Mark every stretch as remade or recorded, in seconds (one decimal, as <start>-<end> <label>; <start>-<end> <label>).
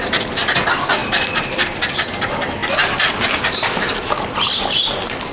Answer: 0.0-5.3 recorded